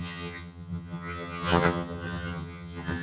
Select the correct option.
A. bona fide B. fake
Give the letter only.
B